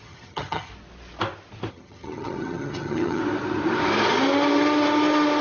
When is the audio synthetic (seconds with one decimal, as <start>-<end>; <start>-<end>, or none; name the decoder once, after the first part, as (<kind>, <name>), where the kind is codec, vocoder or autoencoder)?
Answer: 0.0-0.7 (vocoder, HiFi-GAN); 1.7-3.2